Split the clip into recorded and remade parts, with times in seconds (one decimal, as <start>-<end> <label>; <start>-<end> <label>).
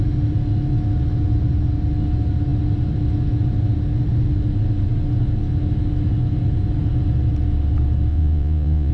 0.0-8.1 recorded; 8.1-8.9 remade